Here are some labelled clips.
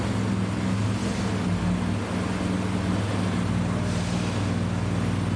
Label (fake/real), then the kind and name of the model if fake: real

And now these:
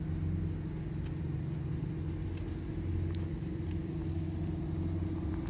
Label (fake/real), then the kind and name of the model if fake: real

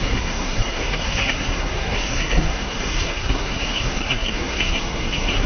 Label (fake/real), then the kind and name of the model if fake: fake, codec, SNAC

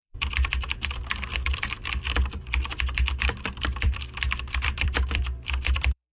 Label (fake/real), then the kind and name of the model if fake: fake, vocoder, BigVGAN v2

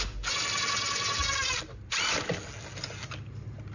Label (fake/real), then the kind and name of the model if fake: real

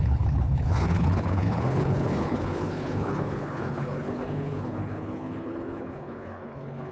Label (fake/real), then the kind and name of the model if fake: fake, codec, HILCodec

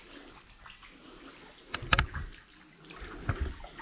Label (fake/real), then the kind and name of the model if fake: real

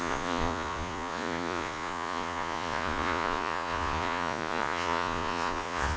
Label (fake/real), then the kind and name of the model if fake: fake, vocoder, Vocos